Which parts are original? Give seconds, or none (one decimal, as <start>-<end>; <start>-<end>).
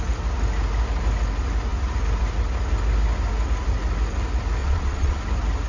0.0-4.6; 5.2-5.7